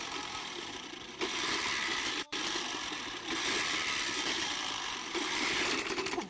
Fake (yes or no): yes